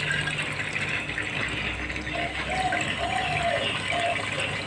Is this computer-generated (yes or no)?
no